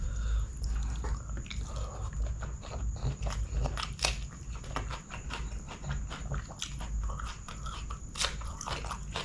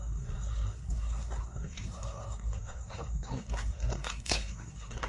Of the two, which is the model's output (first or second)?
second